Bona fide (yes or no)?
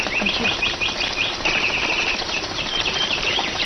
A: no